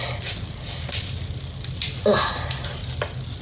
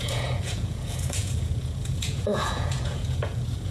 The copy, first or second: second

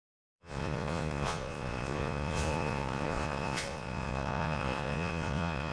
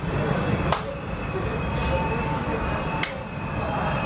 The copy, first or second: first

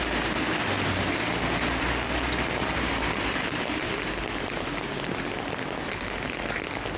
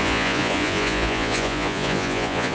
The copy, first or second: second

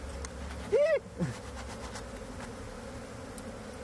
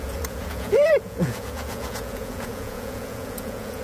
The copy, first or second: second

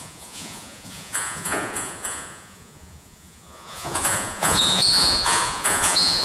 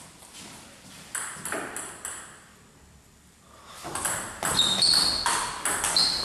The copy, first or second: first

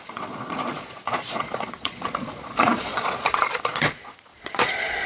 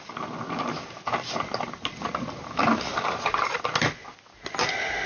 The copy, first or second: first